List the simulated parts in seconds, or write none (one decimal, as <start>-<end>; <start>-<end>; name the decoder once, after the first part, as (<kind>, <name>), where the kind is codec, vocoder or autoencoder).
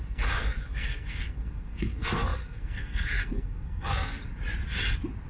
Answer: 0.0-4.3 (codec, SNAC)